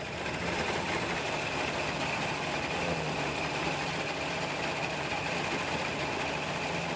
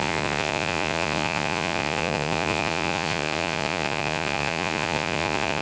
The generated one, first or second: second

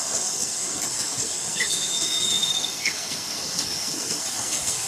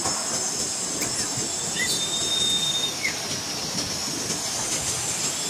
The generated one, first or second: first